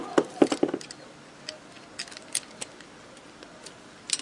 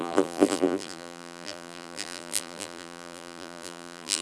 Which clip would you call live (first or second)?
first